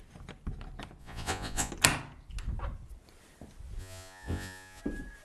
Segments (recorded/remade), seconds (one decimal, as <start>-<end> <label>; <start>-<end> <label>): 0.0-1.0 recorded; 1.0-1.7 remade; 1.7-3.8 recorded; 3.8-4.8 remade; 4.8-5.2 recorded